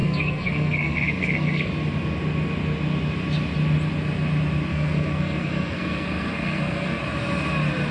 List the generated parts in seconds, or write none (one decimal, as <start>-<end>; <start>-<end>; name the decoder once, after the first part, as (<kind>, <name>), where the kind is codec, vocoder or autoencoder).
0.0-1.7 (codec, SNAC); 4.7-7.0